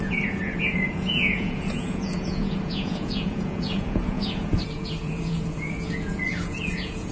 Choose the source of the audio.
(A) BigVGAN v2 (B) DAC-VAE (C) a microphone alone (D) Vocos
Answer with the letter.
D